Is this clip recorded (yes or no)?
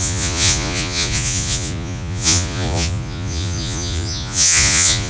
no